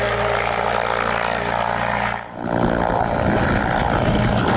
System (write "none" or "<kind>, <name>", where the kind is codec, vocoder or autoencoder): none